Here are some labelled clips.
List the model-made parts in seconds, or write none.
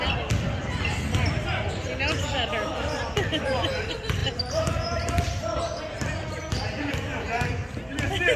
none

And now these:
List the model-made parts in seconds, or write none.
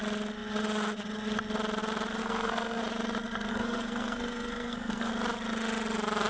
2.2-2.8; 3.5-5.1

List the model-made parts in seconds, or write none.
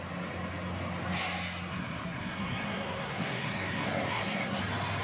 1.7-4.6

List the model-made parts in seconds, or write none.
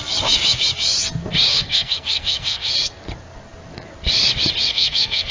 1.5-2.7; 4.7-5.3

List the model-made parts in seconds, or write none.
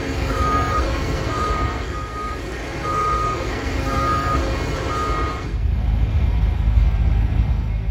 0.0-4.4; 5.4-7.9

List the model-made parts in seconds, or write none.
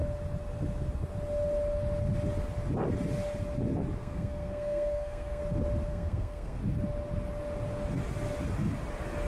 4.0-5.4; 5.9-6.6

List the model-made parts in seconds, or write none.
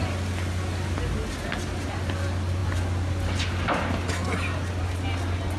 none